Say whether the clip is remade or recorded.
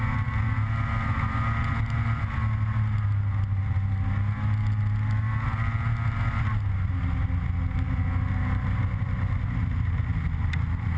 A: recorded